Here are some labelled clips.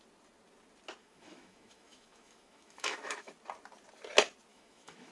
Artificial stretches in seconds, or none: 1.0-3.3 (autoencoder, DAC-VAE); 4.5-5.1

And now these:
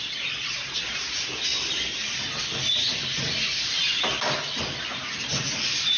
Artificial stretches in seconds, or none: none

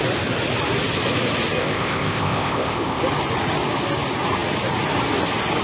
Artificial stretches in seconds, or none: 1.6-3.0 (codec, ZipCodec)

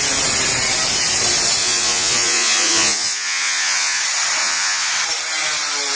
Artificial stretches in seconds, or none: 1.6-4.0 (vocoder, Vocos); 4.4-4.9